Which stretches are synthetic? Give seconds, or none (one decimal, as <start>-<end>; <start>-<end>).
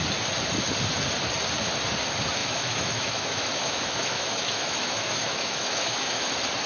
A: 2.4-6.3